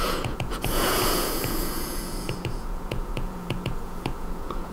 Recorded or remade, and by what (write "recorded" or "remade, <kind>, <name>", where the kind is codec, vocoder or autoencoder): remade, vocoder, Vocos